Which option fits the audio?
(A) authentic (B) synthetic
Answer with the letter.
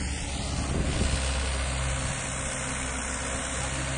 A